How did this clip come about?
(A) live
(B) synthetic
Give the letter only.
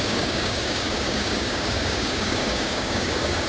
B